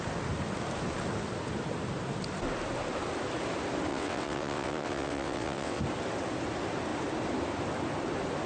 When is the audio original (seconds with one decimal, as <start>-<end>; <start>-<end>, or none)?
0.0-3.9; 5.8-8.5